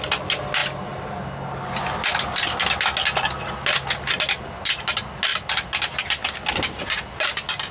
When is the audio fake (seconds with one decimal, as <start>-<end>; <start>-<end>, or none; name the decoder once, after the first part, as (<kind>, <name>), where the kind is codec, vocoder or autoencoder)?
none